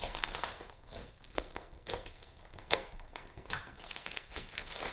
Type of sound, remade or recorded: remade